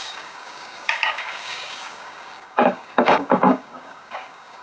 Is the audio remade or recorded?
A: remade